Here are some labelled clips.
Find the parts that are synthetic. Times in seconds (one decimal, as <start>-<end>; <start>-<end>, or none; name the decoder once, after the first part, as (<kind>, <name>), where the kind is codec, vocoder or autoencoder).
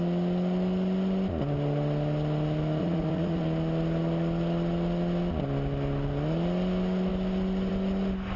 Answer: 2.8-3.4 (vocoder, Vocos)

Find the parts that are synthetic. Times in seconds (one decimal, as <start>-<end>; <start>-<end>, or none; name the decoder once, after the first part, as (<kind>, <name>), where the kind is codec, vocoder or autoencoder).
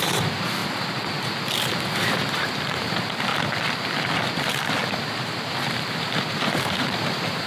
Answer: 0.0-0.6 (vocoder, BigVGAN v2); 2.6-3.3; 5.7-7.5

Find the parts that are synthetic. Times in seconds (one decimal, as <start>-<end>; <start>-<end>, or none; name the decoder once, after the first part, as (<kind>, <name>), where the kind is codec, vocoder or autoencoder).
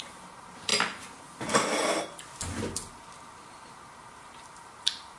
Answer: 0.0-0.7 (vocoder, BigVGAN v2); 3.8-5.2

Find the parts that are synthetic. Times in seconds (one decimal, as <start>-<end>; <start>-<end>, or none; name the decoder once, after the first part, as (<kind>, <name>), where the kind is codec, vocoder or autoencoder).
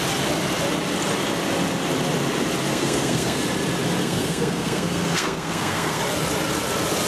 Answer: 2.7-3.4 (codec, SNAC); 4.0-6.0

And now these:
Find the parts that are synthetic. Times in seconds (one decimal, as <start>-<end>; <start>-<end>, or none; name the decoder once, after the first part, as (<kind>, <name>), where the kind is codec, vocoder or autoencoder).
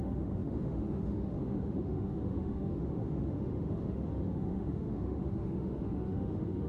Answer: 0.0-6.7 (autoencoder, DAC-VAE)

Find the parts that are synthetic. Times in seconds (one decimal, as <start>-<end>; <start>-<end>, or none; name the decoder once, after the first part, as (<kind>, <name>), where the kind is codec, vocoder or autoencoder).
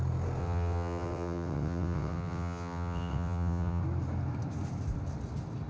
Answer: 0.4-3.8 (vocoder, WaveNeXt)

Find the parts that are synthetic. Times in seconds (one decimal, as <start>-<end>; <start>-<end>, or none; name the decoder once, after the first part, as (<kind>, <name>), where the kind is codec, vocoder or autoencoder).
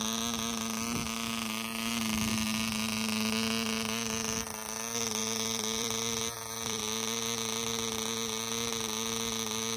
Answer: 5.2-6.8 (vocoder, BigVGAN v2)